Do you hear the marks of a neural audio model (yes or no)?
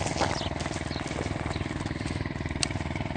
no